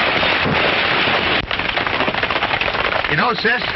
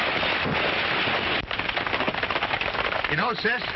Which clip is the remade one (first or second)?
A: first